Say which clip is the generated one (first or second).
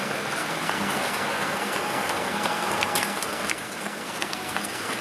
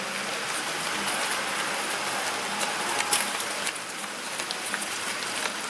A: first